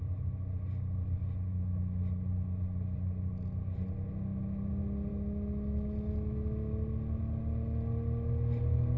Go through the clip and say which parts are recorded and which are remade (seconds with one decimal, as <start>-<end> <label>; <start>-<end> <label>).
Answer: 0.0-1.5 recorded; 1.5-2.0 remade; 2.0-5.1 recorded; 5.1-6.7 remade; 6.7-9.0 recorded